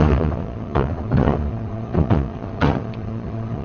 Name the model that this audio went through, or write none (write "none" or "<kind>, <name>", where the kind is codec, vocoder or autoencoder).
vocoder, Vocos